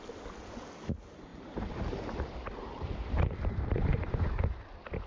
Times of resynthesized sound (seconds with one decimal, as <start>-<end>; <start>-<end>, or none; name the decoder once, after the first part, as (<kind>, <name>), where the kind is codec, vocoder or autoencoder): 1.3-4.4 (vocoder, BigVGAN v2)